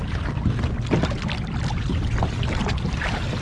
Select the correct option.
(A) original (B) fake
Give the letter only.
A